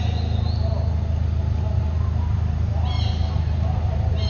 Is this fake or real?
real